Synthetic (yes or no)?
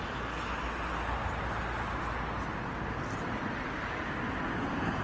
no